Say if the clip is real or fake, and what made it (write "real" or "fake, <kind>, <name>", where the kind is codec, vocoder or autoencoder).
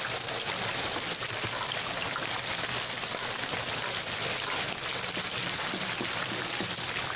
real